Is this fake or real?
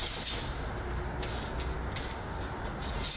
real